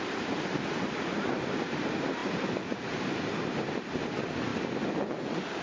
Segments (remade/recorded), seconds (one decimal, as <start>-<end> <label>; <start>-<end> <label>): 0.0-2.2 recorded; 2.2-4.0 remade; 4.0-5.6 recorded